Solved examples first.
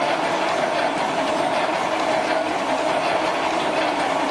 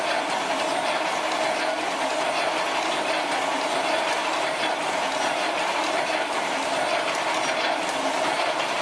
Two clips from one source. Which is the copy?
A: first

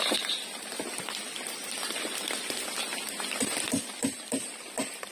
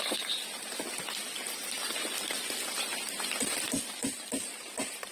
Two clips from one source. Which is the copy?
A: first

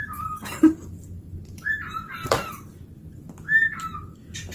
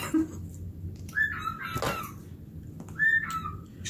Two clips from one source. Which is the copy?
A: first